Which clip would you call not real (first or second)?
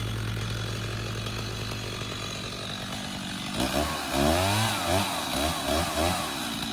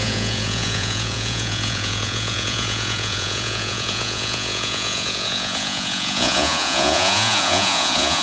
second